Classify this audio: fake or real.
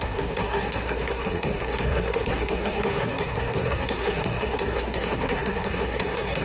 fake